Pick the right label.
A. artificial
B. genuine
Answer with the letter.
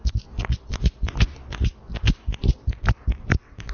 A